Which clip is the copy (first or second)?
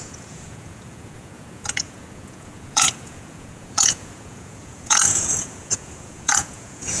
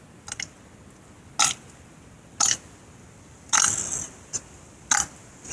first